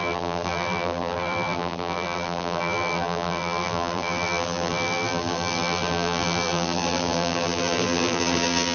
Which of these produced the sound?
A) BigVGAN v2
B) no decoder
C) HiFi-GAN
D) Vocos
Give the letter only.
A